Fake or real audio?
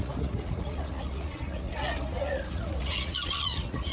fake